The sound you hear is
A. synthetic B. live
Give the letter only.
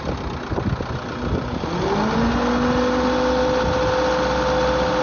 B